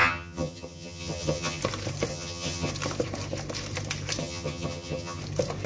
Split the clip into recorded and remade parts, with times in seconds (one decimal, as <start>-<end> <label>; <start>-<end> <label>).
0.0-1.6 remade; 1.6-2.1 recorded; 2.1-2.7 remade; 2.7-4.2 recorded; 4.2-5.2 remade; 5.2-5.7 recorded